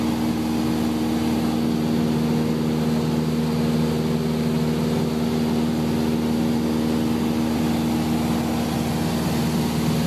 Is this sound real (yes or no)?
yes